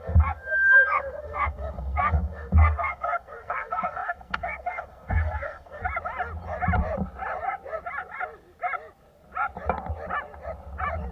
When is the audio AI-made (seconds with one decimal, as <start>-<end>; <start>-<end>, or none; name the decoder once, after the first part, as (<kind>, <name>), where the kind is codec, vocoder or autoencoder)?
0.0-5.8 (codec, SNAC)